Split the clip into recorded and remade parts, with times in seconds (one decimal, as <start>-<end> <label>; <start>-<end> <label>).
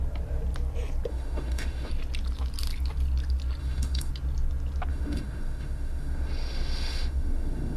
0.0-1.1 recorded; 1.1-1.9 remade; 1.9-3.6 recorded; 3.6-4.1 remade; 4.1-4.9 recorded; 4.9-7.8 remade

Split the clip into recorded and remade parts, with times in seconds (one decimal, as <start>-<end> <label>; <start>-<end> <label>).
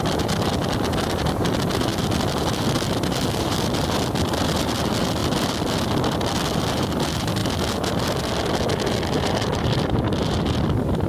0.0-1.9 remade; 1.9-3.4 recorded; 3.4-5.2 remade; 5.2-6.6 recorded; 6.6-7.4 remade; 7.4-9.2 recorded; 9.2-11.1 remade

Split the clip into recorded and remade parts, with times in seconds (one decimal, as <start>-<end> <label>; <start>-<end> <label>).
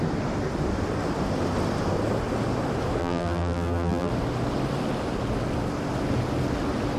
0.0-3.0 recorded; 3.0-4.1 remade; 4.1-7.0 recorded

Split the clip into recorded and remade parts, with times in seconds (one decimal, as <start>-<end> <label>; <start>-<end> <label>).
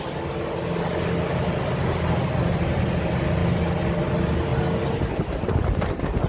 0.0-6.3 recorded